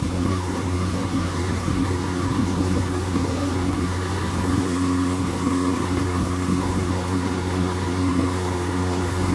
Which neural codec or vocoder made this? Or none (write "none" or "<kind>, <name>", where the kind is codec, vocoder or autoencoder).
codec, SNAC